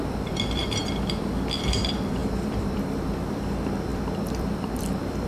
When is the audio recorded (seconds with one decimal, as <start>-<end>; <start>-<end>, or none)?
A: none